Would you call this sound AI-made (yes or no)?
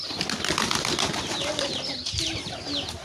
no